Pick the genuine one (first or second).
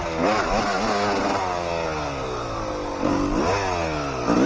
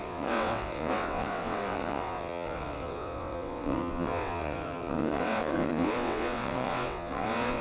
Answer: first